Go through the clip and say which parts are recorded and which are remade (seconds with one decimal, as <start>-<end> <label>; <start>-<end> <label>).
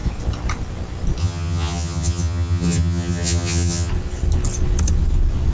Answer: 0.0-1.2 recorded; 1.2-3.9 remade; 3.9-5.5 recorded